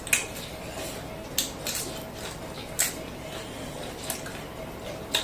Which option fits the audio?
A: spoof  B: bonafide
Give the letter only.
B